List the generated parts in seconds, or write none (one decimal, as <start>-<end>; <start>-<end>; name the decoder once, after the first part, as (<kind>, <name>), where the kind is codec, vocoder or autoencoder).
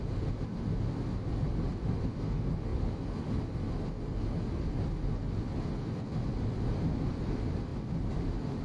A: none